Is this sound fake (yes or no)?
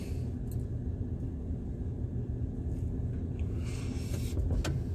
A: no